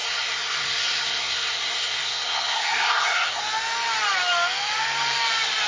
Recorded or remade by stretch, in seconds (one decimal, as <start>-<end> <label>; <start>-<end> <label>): 0.0-3.4 remade; 3.4-5.7 recorded